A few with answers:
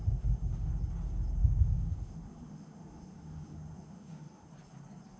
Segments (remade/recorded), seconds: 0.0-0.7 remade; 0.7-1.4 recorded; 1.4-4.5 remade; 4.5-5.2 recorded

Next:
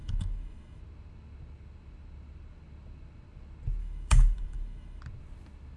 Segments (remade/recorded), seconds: 0.0-0.8 remade; 0.8-3.8 recorded; 3.8-5.0 remade; 5.0-5.8 recorded